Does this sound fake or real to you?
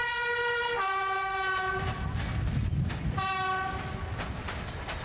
real